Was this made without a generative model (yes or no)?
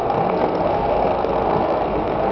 no